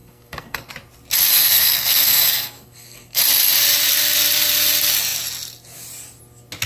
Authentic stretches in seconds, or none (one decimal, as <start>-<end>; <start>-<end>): 0.7-1.3; 3.2-6.7